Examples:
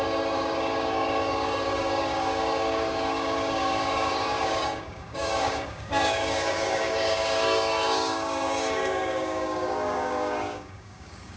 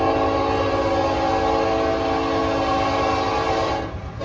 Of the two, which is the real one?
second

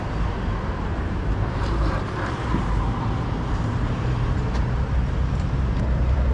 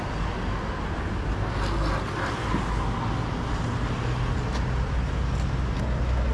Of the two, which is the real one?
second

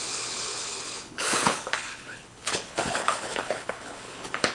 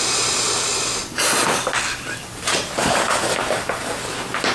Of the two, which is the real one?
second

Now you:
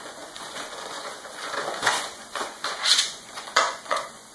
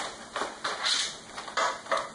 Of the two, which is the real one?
second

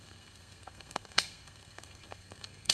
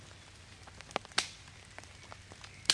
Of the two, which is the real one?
second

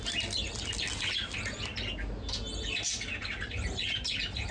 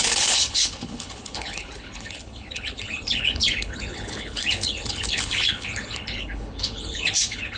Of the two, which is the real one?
first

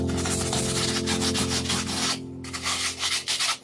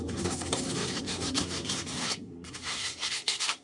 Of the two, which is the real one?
first